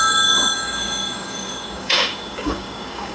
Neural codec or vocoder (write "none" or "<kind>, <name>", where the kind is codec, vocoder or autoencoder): codec, DAC